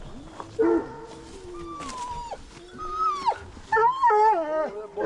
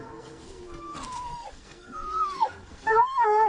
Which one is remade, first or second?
second